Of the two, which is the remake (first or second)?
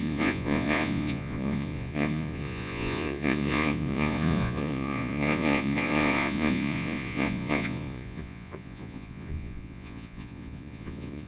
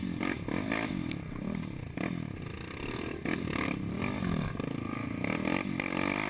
first